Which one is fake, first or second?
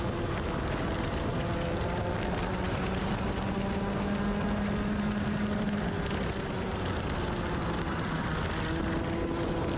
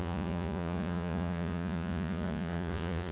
second